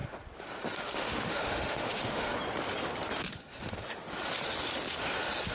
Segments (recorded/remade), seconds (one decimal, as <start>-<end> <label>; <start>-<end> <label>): 0.0-0.8 recorded; 0.8-2.3 remade; 2.3-5.5 recorded